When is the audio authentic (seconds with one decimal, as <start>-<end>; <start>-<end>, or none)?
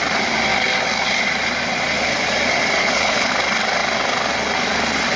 0.0-2.8; 3.3-5.2